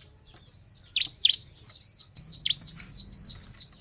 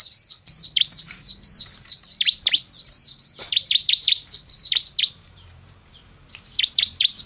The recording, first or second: first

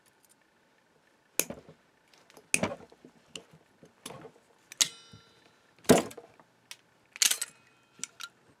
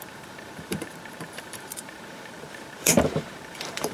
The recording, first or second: first